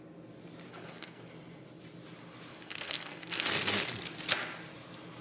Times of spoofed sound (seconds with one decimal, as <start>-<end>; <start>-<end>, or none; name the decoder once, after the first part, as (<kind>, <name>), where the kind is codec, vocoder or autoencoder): 0.7-1.3 (codec, SNAC); 2.5-3.5